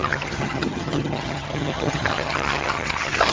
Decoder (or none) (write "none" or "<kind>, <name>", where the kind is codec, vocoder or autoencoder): vocoder, HiFi-GAN